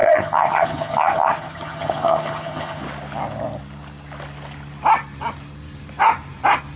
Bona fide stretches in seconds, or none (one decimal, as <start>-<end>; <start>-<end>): 2.8-6.8